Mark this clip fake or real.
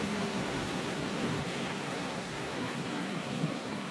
fake